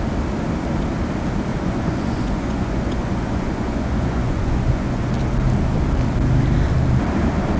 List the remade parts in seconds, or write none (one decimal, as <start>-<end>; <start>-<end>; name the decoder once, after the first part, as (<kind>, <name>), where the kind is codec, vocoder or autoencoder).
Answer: 1.5-5.1 (vocoder, Vocos)

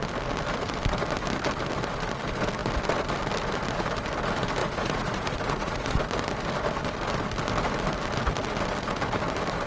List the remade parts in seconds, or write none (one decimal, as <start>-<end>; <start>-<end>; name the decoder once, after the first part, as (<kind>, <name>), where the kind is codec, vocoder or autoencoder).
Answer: 4.6-6.0 (vocoder, Vocos)

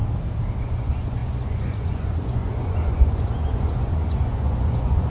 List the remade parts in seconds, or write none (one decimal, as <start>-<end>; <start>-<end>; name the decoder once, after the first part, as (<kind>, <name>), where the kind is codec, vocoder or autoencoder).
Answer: 0.6-5.1 (vocoder, Vocos)